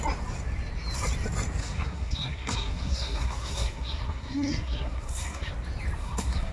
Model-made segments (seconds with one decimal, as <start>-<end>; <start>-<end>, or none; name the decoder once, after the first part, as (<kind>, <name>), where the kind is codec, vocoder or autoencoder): 1.6-5.5 (codec, SNAC); 6.0-6.5